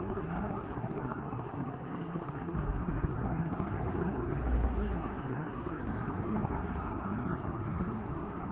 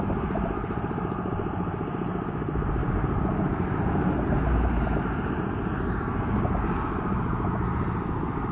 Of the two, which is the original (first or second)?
second